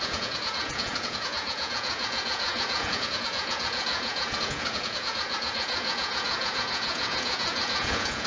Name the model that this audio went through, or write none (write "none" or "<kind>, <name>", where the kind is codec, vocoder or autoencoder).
vocoder, Vocos